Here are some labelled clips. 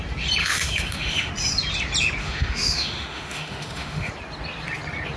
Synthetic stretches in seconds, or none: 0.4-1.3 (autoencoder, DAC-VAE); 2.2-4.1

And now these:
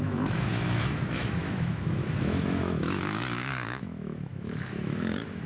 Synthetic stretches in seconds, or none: 0.0-5.5 (autoencoder, DAC-VAE)

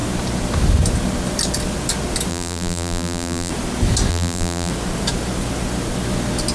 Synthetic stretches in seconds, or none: 2.3-3.5 (vocoder, BigVGAN v2); 4.1-4.7